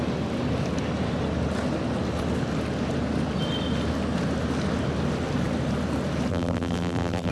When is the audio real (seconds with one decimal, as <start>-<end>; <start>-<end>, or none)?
0.0-6.3